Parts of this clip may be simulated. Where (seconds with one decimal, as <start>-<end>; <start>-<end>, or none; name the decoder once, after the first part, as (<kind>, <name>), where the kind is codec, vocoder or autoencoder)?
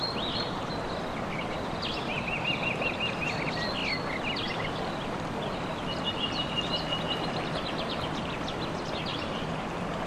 9.1-9.7 (vocoder, BigVGAN v2)